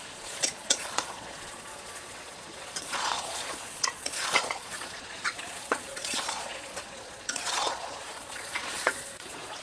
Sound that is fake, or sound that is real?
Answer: fake